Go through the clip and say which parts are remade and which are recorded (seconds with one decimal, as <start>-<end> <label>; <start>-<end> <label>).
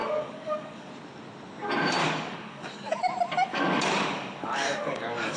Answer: 0.0-0.9 remade; 0.9-2.0 recorded; 2.0-3.0 remade; 3.0-3.5 recorded; 3.5-5.4 remade